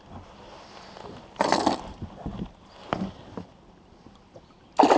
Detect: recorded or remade recorded